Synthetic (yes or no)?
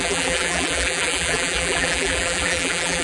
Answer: yes